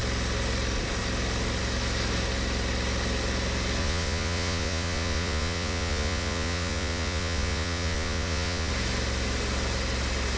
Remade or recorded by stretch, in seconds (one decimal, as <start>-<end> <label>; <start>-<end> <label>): 0.0-3.8 recorded; 3.8-8.7 remade; 8.7-10.4 recorded